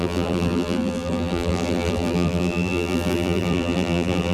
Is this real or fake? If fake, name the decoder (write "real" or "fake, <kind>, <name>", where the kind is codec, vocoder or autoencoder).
fake, vocoder, BigVGAN v2